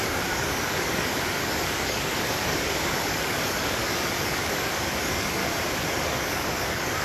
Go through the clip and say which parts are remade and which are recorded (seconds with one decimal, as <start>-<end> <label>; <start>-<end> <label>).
0.0-5.4 remade; 5.4-5.9 recorded; 5.9-7.0 remade